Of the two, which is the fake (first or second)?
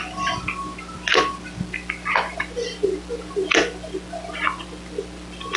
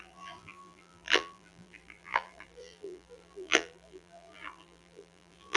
second